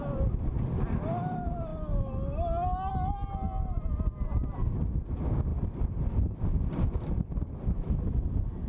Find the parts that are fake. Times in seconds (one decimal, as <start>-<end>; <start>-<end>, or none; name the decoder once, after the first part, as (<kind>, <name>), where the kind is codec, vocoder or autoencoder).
none